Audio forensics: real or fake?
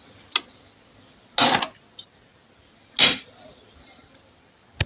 real